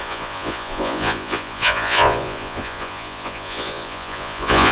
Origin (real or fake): fake